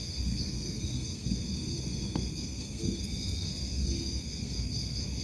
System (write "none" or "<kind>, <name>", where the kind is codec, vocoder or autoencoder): codec, SNAC